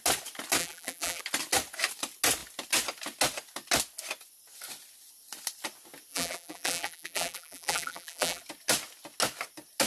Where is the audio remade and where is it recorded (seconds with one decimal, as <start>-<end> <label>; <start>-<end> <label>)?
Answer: 0.0-0.6 recorded; 0.6-1.2 remade; 1.2-6.1 recorded; 6.1-8.4 remade; 8.4-9.9 recorded